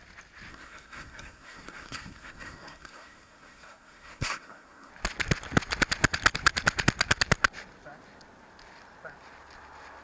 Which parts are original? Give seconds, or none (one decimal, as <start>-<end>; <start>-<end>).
0.0-0.5; 4.9-10.0